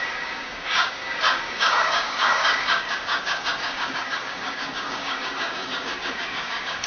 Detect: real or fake fake